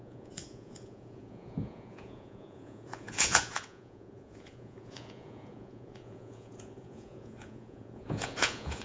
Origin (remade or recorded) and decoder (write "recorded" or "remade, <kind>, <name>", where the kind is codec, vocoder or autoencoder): remade, vocoder, Vocos